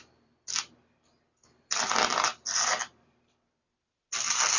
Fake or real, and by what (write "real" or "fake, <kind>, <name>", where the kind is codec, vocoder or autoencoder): real